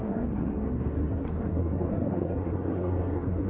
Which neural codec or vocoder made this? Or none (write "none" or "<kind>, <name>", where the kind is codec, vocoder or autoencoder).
codec, SNAC